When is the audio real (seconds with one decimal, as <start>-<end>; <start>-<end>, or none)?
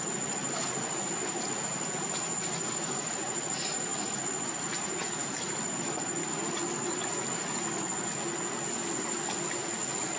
0.0-10.2